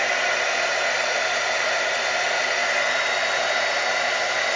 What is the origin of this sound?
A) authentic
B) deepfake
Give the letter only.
B